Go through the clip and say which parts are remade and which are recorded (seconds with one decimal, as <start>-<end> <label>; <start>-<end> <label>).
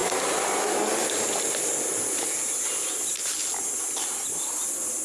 0.0-5.0 recorded